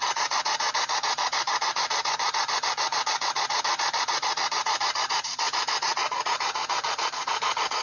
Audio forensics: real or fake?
fake